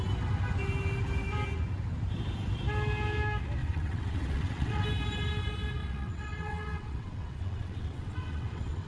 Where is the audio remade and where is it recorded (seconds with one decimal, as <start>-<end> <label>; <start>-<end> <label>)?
0.0-3.6 recorded; 3.6-4.8 remade; 4.8-5.8 recorded; 5.8-8.9 remade